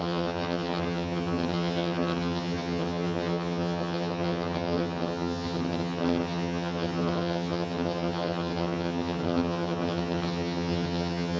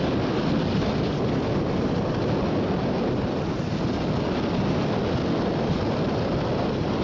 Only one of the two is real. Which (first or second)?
second